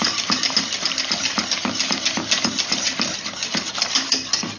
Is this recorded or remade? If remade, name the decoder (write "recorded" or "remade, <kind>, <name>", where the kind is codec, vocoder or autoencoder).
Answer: remade, vocoder, BigVGAN v2